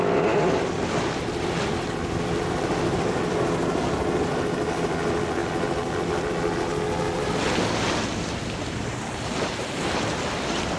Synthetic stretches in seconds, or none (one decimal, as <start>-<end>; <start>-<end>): none

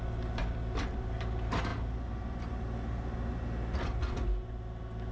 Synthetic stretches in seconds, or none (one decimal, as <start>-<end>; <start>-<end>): none

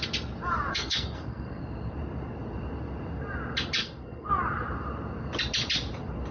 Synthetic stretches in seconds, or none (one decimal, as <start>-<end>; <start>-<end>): 0.7-1.6; 3.8-4.3